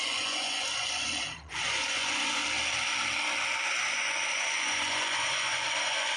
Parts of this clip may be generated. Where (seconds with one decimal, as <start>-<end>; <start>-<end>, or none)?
0.0-2.4; 3.9-6.2

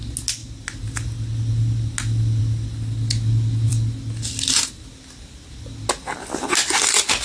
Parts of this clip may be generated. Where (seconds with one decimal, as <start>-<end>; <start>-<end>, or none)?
none

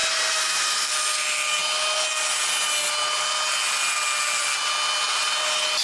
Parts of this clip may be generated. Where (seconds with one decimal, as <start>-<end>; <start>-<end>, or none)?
0.0-0.8

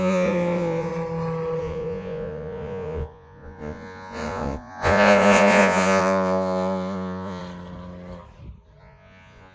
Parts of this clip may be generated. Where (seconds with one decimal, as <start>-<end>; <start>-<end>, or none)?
0.0-0.9; 1.6-7.4; 8.8-9.5

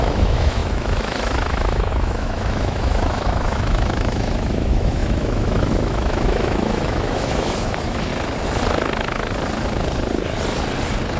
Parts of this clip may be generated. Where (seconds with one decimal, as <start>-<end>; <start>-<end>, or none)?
0.0-8.1